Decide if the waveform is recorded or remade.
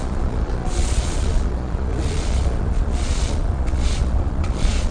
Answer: remade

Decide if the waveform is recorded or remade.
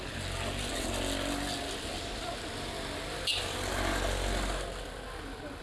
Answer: recorded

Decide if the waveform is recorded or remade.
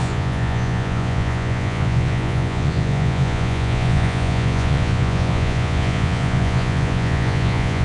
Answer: remade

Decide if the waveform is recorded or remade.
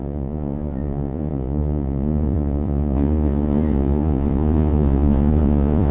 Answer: remade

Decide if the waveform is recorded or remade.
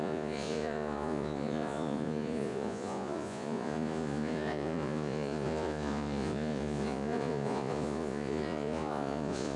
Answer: remade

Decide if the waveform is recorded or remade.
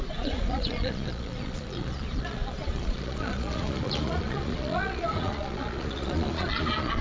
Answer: remade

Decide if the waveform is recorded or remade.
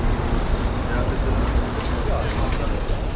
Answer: recorded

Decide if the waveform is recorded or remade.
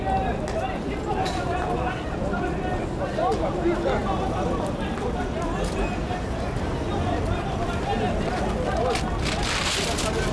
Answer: recorded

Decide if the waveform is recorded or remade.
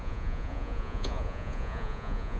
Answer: remade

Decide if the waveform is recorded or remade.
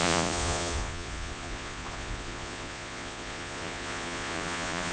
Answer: remade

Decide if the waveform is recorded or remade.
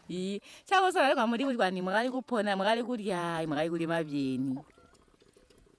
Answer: remade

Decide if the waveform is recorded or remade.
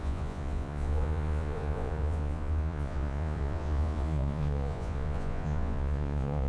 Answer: remade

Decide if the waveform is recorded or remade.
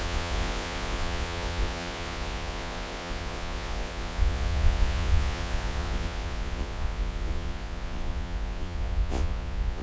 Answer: remade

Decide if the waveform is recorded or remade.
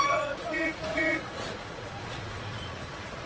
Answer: remade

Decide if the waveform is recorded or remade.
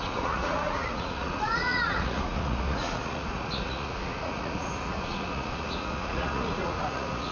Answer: remade